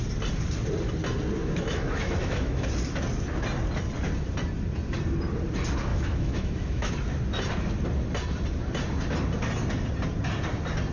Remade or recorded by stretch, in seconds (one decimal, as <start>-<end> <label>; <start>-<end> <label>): 0.0-1.4 recorded; 1.4-2.7 remade; 2.7-5.9 recorded; 5.9-6.9 remade; 6.9-10.9 recorded